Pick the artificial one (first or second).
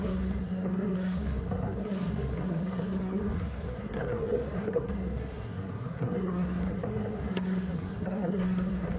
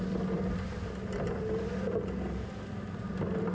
first